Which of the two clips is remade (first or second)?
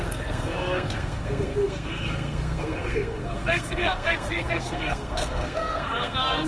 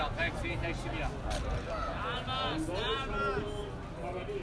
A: first